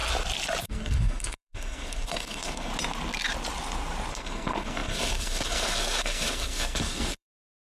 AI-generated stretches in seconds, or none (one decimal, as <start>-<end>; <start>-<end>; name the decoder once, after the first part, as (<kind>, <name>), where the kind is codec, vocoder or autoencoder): 0.6-2.7 (codec, SNAC); 4.1-7.7